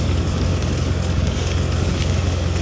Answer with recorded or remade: remade